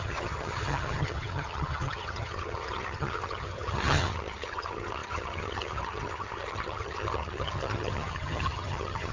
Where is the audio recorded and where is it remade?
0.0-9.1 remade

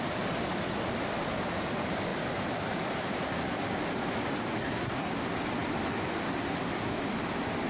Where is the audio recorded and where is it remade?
0.0-4.6 recorded; 4.6-5.1 remade; 5.1-7.7 recorded

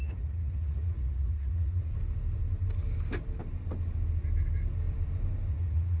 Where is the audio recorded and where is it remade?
0.0-1.9 remade; 1.9-5.5 recorded; 5.5-6.0 remade